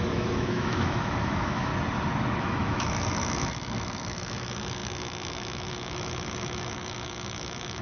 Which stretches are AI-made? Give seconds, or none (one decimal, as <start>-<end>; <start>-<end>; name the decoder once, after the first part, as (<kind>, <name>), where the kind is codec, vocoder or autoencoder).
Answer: 0.0-1.7 (autoencoder, DAC-VAE); 2.4-7.8